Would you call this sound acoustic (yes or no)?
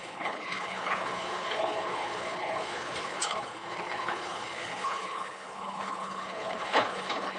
no